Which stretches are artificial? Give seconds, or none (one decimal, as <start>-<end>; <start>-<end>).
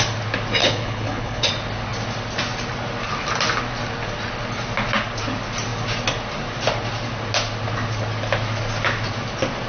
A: 0.6-1.5